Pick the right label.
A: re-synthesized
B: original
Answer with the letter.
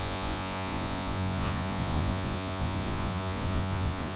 A